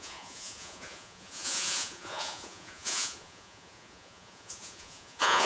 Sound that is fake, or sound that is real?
fake